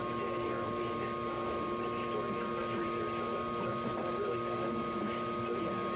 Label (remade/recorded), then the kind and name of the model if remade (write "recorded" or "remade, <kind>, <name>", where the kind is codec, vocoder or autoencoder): recorded